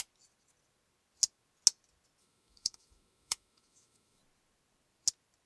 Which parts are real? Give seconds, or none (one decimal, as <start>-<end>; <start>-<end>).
0.0-2.2; 4.2-5.5